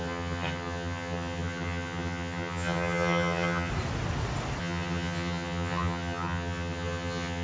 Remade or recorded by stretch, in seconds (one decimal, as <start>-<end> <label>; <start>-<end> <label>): 0.0-3.7 remade; 3.7-4.6 recorded; 4.6-7.4 remade